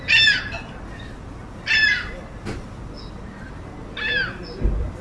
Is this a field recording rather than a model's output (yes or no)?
yes